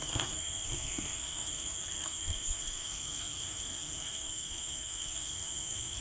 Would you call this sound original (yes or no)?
no